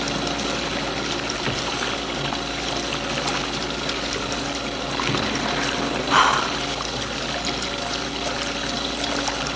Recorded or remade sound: recorded